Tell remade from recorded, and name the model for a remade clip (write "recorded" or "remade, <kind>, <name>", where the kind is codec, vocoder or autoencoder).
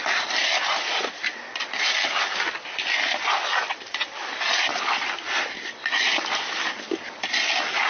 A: recorded